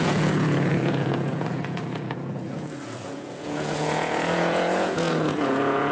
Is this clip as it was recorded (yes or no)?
no